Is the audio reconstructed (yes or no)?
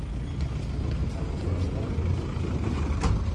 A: no